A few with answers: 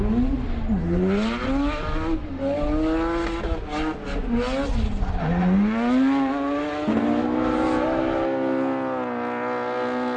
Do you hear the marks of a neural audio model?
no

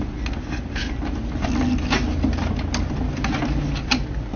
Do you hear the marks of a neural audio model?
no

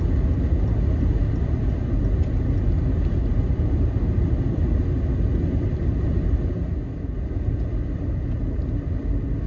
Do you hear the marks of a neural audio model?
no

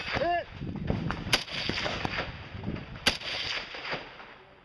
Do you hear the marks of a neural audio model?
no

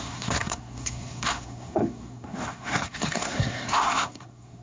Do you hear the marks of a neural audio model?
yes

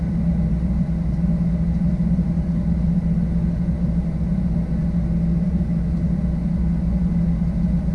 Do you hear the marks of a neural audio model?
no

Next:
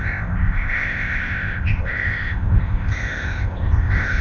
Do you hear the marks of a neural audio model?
yes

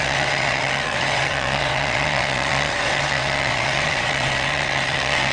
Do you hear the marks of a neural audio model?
yes